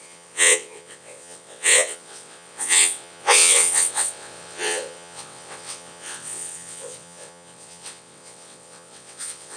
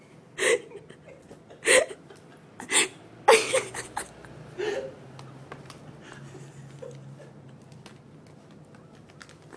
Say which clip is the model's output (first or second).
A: first